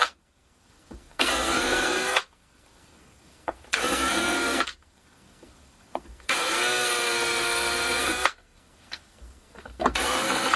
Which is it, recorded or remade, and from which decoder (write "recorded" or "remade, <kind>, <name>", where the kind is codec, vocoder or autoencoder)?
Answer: remade, codec, SNAC